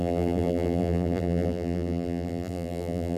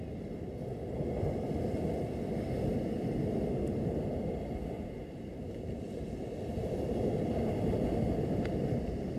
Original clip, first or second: second